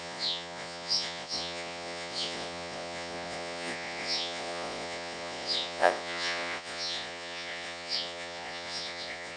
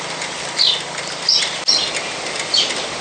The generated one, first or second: first